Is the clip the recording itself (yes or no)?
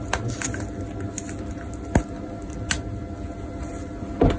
yes